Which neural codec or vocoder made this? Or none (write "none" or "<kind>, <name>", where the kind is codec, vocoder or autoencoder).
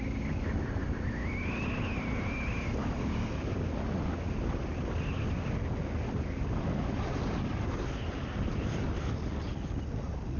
none